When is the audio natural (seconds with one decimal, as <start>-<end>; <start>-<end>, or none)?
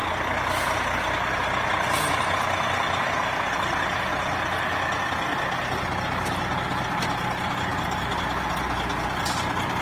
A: 0.0-9.8